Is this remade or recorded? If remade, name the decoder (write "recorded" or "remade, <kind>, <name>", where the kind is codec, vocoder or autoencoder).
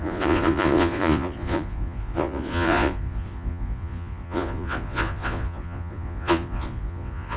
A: remade, vocoder, Vocos